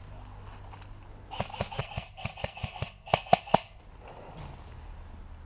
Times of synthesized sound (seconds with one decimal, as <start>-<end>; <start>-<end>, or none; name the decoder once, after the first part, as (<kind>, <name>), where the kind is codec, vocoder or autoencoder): 1.8-3.8 (codec, SNAC)